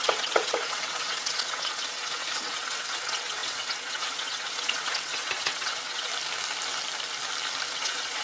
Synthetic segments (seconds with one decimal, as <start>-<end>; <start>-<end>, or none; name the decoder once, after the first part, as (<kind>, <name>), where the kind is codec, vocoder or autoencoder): 0.0-6.1 (vocoder, WaveNeXt); 7.7-8.2